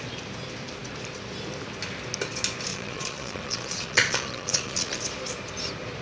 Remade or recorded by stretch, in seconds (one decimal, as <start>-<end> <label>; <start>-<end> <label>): 0.0-2.7 recorded; 2.7-5.0 remade; 5.0-6.0 recorded